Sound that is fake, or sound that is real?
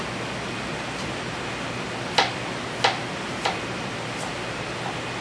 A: real